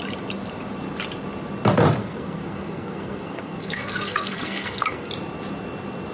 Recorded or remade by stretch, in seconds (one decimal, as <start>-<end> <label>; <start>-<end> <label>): 0.0-2.0 recorded; 2.0-5.1 remade; 5.1-6.1 recorded